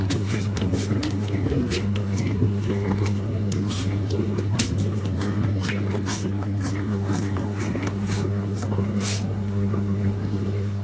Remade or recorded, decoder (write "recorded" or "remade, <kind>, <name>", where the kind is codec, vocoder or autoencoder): remade, codec, SNAC